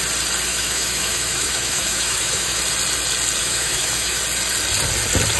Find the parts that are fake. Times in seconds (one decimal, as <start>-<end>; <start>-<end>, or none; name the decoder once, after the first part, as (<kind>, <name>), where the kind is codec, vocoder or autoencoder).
0.5-2.6 (autoencoder, DAC-VAE); 3.4-4.2